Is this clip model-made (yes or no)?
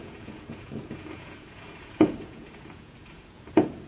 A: yes